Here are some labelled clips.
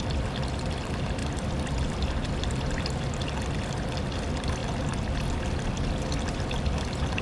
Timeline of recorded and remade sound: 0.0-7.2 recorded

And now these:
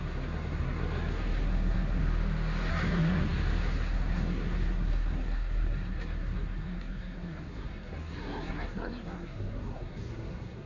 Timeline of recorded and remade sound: 0.0-2.0 remade; 2.0-2.7 recorded; 2.7-10.7 remade

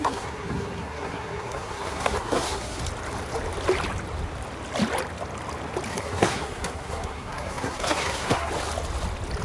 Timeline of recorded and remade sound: 0.0-2.8 remade; 2.8-5.9 recorded; 5.9-8.5 remade; 8.5-9.4 recorded

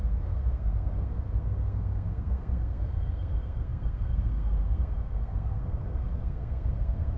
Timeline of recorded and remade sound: 0.0-7.2 remade

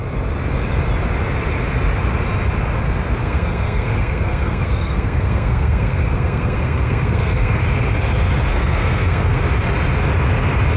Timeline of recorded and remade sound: 0.0-3.2 recorded; 3.2-7.6 remade; 7.6-8.5 recorded; 8.5-9.4 remade; 9.4-10.8 recorded

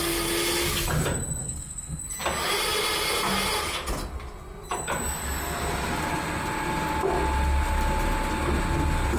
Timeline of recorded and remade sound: 0.0-1.4 recorded; 1.4-2.0 remade; 2.0-9.2 recorded

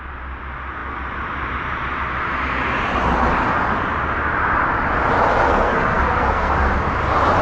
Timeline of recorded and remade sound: 0.0-5.4 recorded; 5.4-6.7 remade; 6.7-7.4 recorded

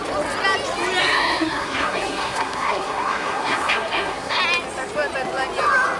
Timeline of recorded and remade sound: 0.0-1.0 recorded; 1.0-4.4 remade; 4.4-6.0 recorded